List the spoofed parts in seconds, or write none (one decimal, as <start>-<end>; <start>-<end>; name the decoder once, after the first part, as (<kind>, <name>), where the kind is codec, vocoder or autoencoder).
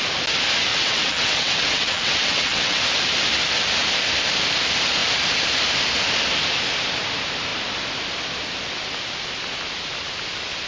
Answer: 0.7-2.8 (vocoder, WaveNeXt)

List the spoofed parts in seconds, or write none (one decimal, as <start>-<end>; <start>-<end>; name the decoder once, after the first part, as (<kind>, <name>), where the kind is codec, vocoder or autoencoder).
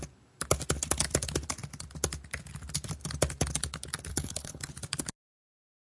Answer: 4.1-4.7 (codec, HILCodec)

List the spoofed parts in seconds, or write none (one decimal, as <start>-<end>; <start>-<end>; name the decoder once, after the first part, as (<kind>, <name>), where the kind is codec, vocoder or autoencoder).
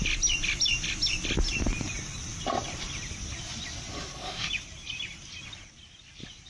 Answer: 3.9-4.5 (codec, DAC)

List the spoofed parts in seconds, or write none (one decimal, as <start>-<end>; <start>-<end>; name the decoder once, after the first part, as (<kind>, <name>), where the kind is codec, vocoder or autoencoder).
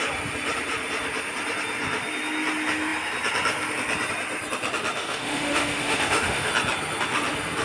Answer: 5.0-6.5 (autoencoder, DAC-VAE)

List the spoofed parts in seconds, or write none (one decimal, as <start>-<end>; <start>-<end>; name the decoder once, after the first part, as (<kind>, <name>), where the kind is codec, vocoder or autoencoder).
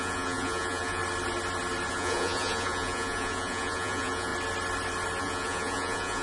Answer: 0.0-1.0 (vocoder, Vocos); 1.9-4.3; 5.2-6.2